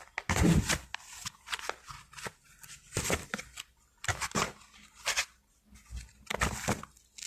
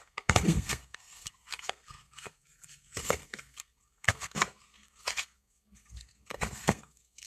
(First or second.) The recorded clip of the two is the first